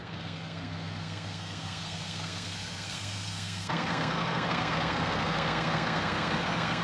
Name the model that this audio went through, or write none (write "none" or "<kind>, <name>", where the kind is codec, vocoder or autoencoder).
codec, SNAC